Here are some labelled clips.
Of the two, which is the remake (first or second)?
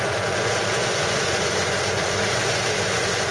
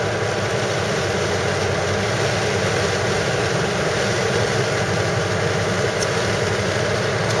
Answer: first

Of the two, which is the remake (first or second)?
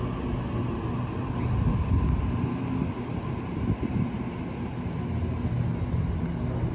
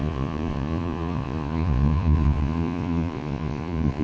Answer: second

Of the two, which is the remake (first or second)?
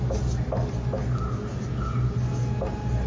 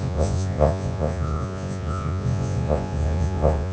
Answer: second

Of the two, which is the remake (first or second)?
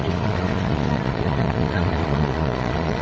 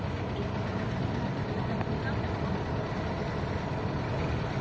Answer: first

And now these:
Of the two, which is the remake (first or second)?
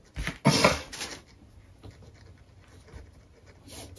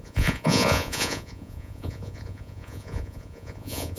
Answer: second